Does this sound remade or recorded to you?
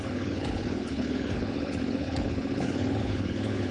remade